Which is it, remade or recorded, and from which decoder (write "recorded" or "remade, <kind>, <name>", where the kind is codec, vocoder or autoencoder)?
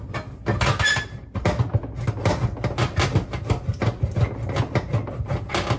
recorded